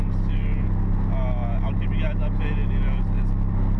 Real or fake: real